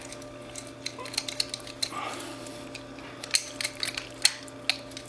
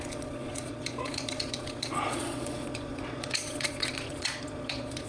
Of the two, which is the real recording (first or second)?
first